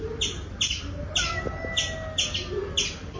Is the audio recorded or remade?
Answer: recorded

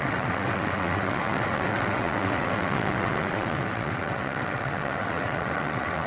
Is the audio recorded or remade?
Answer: remade